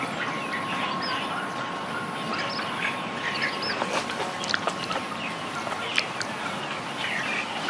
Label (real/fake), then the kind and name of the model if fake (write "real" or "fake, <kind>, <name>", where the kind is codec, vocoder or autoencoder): real